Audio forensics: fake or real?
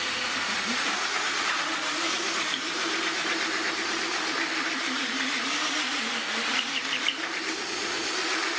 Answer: fake